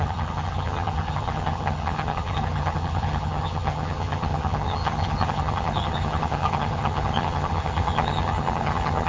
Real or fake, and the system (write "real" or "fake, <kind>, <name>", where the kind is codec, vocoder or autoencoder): fake, vocoder, HiFi-GAN